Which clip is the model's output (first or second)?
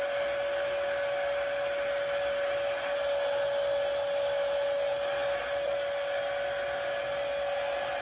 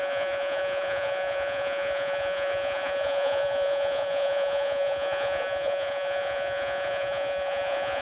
second